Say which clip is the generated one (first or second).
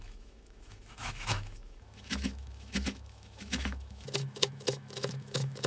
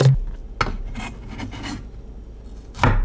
first